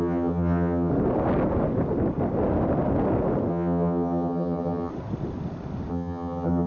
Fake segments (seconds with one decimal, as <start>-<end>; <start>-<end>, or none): 0.0-0.9; 3.5-4.9; 5.9-6.7